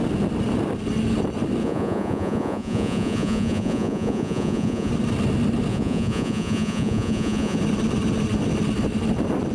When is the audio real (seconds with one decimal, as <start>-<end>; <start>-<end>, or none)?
0.0-1.6; 4.9-5.7; 7.6-9.5